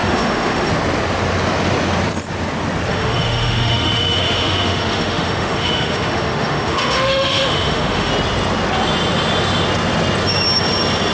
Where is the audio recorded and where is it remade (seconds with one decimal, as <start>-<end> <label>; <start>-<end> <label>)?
0.0-0.7 remade; 0.7-2.9 recorded; 2.9-8.1 remade; 8.1-11.1 recorded